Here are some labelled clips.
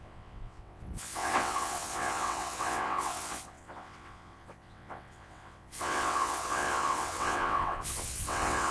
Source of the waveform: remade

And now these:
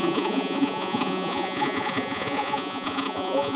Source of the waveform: remade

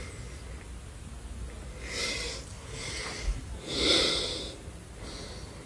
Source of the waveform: recorded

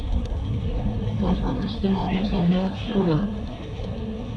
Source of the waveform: remade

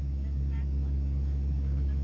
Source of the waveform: remade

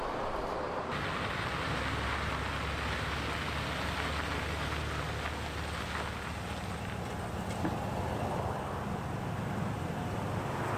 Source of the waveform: recorded